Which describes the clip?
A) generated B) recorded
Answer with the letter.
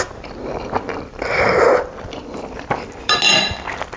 A